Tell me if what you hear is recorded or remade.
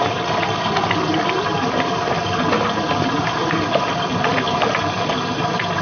recorded